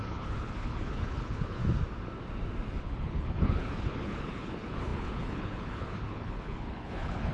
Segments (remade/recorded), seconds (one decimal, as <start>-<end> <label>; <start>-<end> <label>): 0.0-1.6 remade; 1.6-2.8 recorded; 2.8-7.3 remade